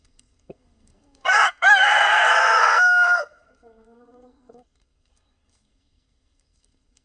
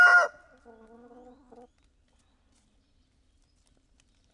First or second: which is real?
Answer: second